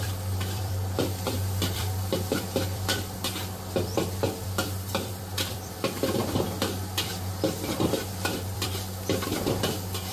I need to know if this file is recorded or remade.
remade